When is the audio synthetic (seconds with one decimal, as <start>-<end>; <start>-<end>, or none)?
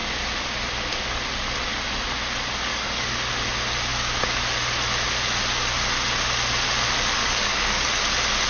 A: 2.7-3.3; 7.2-7.8